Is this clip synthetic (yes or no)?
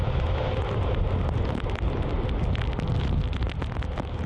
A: no